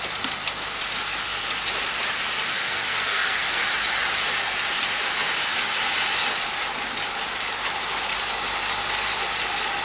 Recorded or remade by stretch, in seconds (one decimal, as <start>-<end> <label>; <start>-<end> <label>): 0.0-2.5 recorded; 2.5-3.6 remade; 3.6-9.8 recorded